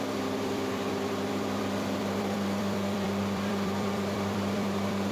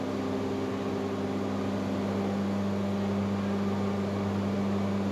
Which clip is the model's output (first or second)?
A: first